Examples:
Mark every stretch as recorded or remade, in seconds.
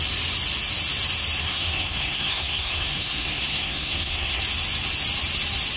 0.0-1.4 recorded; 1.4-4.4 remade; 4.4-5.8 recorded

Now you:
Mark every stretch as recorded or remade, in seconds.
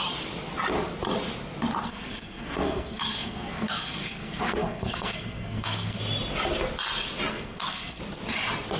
0.0-1.8 recorded; 1.8-6.0 remade; 6.0-7.3 recorded; 7.3-8.0 remade; 8.0-8.8 recorded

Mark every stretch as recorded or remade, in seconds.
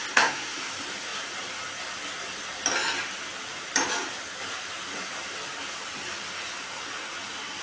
0.0-0.6 remade; 0.6-7.6 recorded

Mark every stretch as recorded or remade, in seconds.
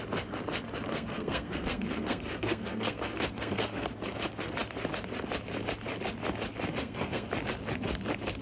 0.0-0.9 recorded; 0.9-3.9 remade; 3.9-6.7 recorded; 6.7-7.3 remade; 7.3-8.4 recorded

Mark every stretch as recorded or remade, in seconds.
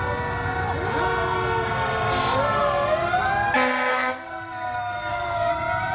0.0-3.9 recorded; 3.9-5.5 remade; 5.5-5.9 recorded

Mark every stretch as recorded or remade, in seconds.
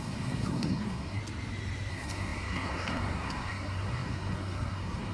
0.0-1.2 remade; 1.2-1.9 recorded; 1.9-5.1 remade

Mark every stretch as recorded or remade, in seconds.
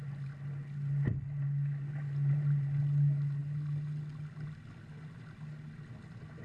0.0-6.4 recorded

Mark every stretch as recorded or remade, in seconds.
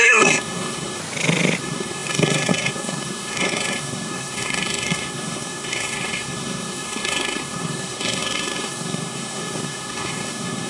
0.0-1.0 remade; 1.0-1.6 recorded; 1.6-10.7 remade